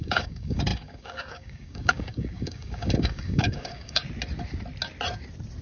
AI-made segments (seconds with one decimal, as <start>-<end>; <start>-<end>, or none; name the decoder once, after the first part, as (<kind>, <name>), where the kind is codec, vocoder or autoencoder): 0.0-4.0 (codec, DAC)